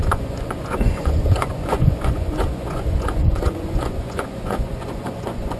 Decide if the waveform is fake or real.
fake